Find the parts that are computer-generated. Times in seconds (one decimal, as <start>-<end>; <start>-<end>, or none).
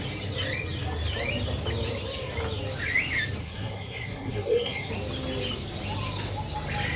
3.4-4.9